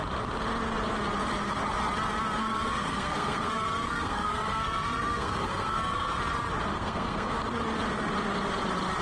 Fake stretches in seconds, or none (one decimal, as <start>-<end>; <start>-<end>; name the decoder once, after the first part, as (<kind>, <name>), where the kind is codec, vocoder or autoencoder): 2.4-6.2 (codec, SNAC); 6.7-7.4